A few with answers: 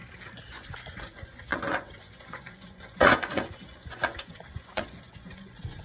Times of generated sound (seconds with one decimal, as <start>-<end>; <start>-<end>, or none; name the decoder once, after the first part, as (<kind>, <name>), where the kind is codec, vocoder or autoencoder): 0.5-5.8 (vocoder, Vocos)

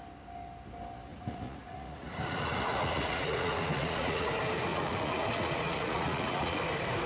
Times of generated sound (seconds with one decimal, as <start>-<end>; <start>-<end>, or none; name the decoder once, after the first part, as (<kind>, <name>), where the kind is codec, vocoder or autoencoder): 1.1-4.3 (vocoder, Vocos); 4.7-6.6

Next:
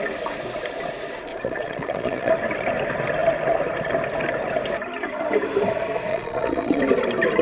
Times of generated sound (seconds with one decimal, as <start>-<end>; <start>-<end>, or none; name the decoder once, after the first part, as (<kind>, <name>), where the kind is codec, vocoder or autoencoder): 1.3-2.3 (vocoder, Vocos); 6.1-6.8